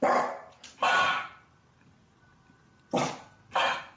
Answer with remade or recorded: recorded